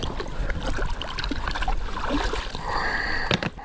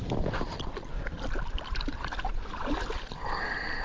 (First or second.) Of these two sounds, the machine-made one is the second